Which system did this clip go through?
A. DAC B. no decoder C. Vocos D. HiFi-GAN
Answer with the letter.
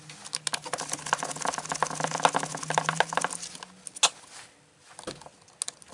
B